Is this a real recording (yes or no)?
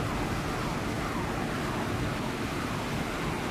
yes